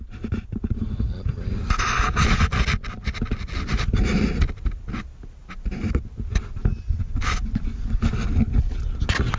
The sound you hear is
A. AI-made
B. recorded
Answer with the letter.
B